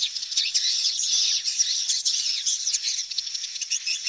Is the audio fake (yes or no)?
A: yes